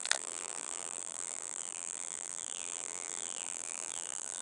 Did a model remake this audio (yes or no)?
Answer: yes